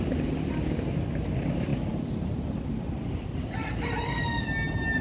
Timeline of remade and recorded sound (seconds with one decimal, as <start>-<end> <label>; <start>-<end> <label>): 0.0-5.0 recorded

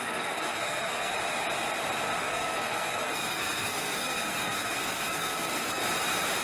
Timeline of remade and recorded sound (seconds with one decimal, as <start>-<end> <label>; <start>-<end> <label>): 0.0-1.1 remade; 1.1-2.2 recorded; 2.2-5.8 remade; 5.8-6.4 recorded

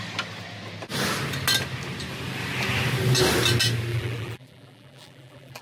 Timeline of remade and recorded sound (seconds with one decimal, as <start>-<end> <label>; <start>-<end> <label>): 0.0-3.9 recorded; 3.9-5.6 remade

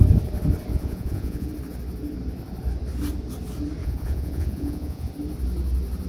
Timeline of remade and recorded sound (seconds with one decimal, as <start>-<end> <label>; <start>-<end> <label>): 0.0-0.7 recorded; 0.7-1.5 remade; 1.5-3.8 recorded; 3.8-5.1 remade; 5.1-6.1 recorded

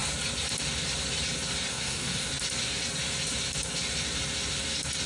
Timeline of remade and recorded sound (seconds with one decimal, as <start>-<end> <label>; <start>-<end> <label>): 0.0-1.7 recorded; 1.7-2.3 remade; 2.3-5.1 recorded

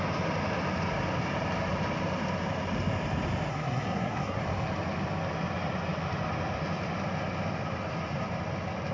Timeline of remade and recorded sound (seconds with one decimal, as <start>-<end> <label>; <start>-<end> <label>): 0.0-3.5 recorded; 3.5-4.4 remade; 4.4-8.9 recorded

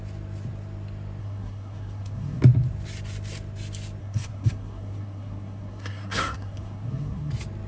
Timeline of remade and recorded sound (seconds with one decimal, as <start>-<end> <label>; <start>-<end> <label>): 0.0-1.2 recorded; 1.2-2.4 remade; 2.4-4.0 recorded; 4.0-7.3 remade; 7.3-7.7 recorded

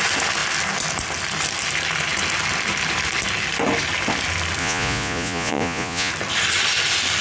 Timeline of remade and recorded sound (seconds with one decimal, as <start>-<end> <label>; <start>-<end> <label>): 0.0-4.6 recorded; 4.6-6.1 remade; 6.1-7.2 recorded